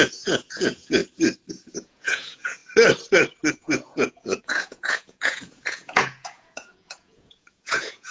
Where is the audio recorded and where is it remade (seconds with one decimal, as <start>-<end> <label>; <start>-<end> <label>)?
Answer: 0.0-1.0 remade; 1.0-1.5 recorded; 1.5-2.6 remade; 2.6-3.5 recorded; 3.5-8.1 remade